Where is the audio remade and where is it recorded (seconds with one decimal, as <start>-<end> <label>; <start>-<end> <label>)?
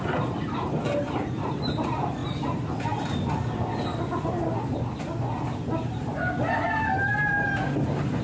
0.0-8.2 recorded